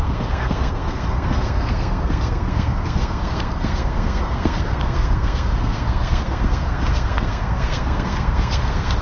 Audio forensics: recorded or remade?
remade